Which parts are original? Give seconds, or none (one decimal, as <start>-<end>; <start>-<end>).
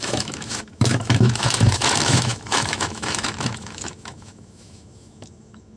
none